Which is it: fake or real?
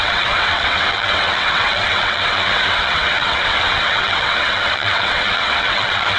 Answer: fake